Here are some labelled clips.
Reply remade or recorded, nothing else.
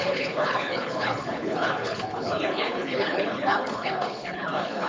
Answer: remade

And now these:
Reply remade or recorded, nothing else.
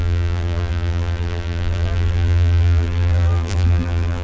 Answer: remade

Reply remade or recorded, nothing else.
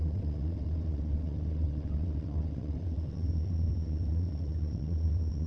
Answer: remade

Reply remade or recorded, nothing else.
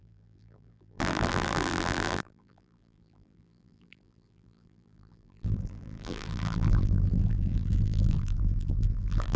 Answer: remade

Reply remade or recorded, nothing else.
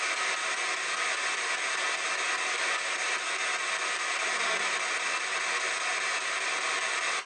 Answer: recorded